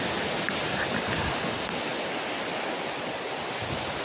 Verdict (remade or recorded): recorded